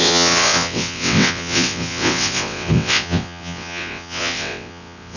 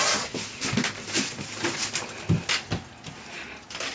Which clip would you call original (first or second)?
second